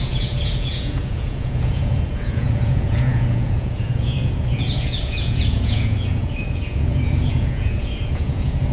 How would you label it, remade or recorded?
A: remade